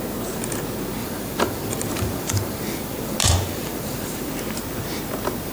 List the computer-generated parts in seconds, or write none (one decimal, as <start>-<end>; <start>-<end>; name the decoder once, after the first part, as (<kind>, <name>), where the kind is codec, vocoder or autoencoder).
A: 1.0-4.3 (vocoder, BigVGAN v2)